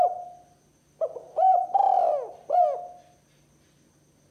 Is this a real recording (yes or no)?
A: yes